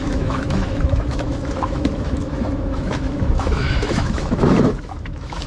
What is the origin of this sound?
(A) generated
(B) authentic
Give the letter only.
A